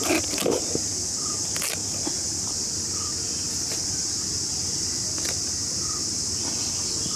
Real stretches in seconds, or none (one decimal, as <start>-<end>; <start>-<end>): 0.0-7.2